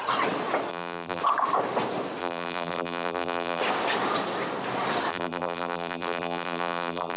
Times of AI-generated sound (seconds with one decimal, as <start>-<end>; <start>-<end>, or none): 0.7-1.2; 2.2-3.6; 5.1-7.2